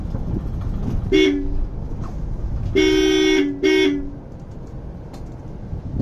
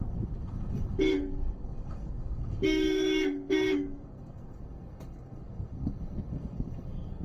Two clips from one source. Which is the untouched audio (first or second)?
first